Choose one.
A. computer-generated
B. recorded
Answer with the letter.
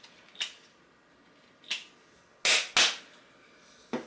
B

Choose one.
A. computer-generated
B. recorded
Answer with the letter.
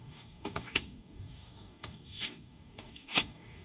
A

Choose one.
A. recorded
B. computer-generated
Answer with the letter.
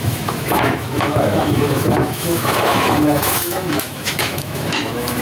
B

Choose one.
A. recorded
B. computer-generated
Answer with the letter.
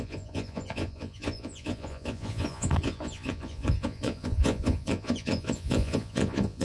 B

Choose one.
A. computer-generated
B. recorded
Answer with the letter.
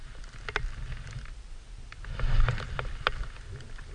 B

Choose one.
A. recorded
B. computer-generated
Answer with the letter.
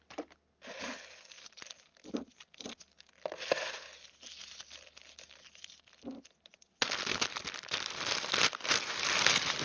A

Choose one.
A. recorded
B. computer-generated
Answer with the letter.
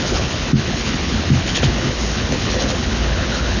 B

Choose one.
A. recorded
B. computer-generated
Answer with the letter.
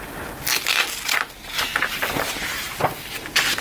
A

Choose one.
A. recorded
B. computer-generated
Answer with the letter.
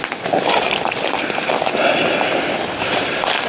B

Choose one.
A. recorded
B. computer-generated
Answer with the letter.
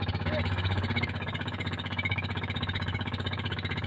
B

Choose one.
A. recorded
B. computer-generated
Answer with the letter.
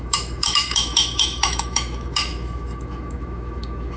B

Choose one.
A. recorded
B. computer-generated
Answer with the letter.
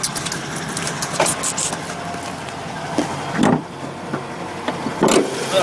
A